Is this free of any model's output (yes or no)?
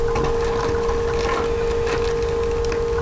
yes